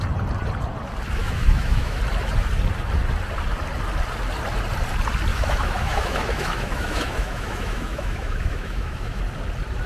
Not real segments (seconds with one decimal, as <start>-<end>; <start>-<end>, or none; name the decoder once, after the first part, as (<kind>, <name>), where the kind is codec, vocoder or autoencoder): 1.2-2.0 (autoencoder, DAC-VAE); 5.3-9.2